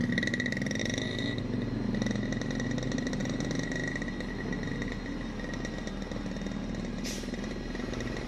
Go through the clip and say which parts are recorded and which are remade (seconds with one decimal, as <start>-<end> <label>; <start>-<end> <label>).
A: 0.0-0.8 recorded; 0.8-1.4 remade; 1.4-8.3 recorded